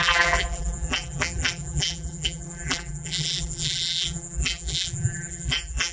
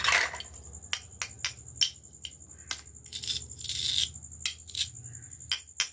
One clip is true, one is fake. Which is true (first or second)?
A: second